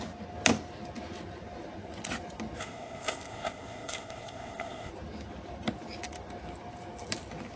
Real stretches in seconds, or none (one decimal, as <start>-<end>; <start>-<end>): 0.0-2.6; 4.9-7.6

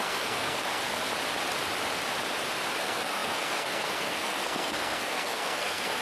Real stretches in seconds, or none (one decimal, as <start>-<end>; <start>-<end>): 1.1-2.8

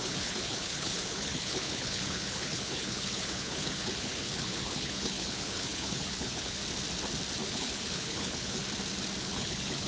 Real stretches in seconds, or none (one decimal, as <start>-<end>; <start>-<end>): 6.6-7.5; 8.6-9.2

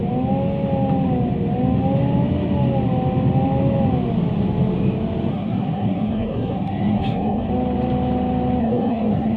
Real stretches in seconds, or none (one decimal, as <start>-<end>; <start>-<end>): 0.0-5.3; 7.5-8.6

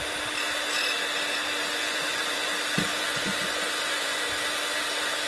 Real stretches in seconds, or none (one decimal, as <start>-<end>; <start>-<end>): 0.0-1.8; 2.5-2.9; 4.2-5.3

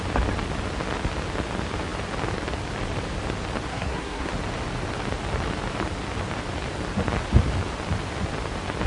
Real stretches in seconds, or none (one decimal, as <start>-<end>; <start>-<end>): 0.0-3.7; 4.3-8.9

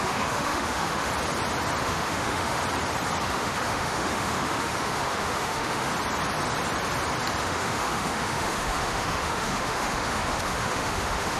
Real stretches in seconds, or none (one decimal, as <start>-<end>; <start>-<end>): 1.1-1.8; 2.6-3.2; 5.9-7.4